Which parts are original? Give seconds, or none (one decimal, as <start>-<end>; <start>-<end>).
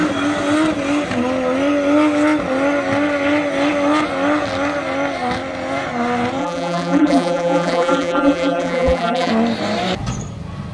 0.0-6.4; 9.3-10.7